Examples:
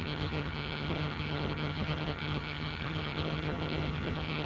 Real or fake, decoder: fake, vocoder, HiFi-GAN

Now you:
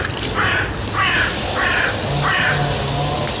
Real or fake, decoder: real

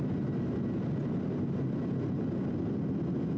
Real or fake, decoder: real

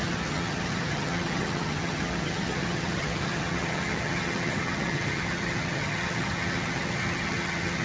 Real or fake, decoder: fake, vocoder, HiFi-GAN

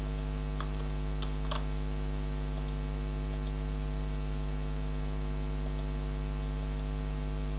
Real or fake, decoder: real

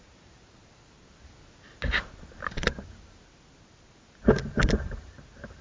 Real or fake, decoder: real